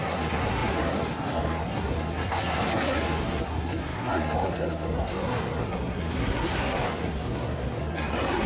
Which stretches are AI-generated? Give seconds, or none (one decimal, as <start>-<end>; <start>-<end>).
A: 0.0-8.5